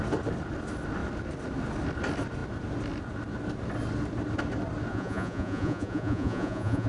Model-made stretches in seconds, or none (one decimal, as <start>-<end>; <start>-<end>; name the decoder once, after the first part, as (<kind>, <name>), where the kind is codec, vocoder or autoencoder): 4.9-6.9 (vocoder, Vocos)